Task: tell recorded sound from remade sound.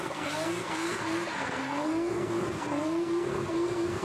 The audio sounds remade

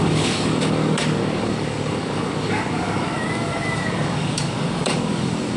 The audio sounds remade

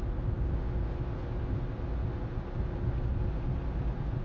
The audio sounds recorded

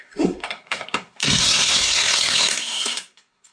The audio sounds remade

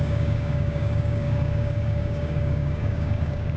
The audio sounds remade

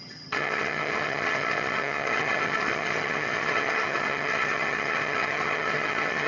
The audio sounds remade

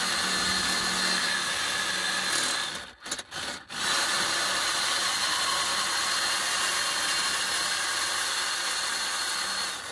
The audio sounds recorded